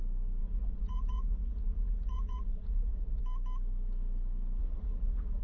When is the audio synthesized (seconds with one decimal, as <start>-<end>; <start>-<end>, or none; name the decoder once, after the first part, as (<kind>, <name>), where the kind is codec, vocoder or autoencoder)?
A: 0.4-3.2 (vocoder, Vocos); 4.6-5.4